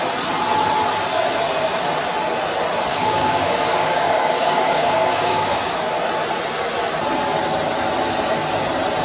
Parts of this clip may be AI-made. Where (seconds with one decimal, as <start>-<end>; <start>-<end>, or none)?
2.9-5.7